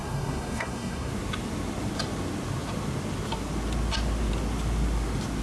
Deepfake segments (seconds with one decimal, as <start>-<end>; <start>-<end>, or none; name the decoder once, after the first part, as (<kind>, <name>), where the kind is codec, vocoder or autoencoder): 0.0-1.1 (codec, SNAC)